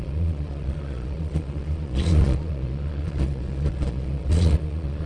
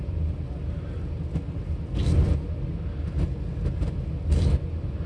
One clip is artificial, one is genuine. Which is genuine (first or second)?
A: second